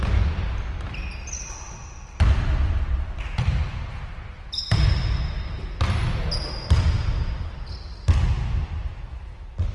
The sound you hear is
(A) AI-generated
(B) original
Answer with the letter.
B